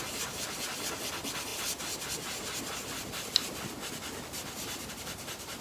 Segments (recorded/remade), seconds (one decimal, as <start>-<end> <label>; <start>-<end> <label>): 0.0-5.6 recorded